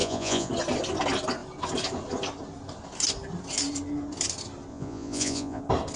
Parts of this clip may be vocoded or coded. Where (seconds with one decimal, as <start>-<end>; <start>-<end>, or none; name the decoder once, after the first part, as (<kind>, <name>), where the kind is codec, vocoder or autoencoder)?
0.0-0.5 (vocoder, Vocos); 4.7-5.6